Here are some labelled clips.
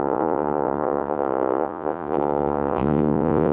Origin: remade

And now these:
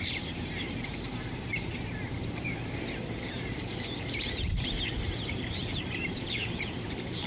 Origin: remade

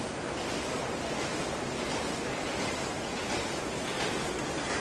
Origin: recorded